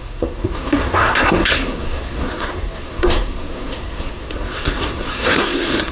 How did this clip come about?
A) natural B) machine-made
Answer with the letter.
B